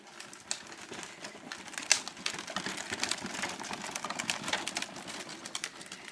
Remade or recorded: recorded